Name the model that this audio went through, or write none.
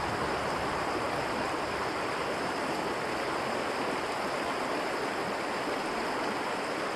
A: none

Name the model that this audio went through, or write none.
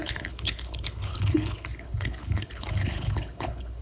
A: codec, HILCodec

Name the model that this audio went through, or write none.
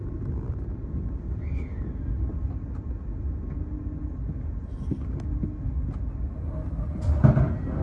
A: none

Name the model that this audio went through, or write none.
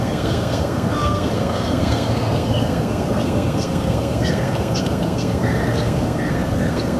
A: codec, SNAC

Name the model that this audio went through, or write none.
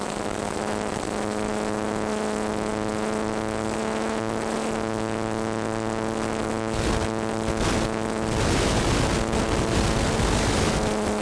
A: none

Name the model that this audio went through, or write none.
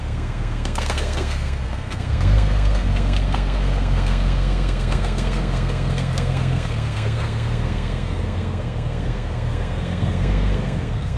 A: codec, SNAC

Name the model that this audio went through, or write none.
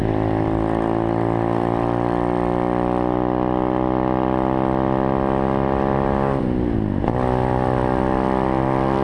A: none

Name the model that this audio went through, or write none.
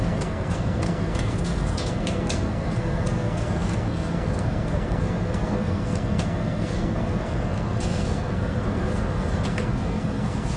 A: codec, SNAC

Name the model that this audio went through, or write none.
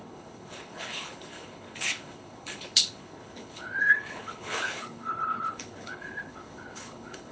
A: codec, HILCodec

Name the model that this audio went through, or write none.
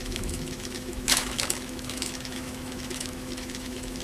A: autoencoder, DAC-VAE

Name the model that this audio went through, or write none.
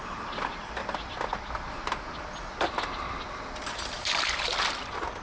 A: none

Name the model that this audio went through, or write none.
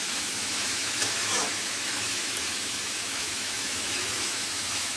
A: autoencoder, DAC-VAE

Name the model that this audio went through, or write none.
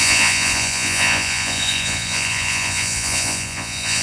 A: vocoder, Vocos